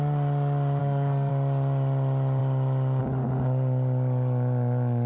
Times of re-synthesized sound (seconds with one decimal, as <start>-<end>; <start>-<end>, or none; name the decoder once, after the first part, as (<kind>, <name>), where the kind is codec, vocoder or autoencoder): 0.8-1.3 (codec, SNAC)